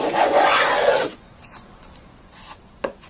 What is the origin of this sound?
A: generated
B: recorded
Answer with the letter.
A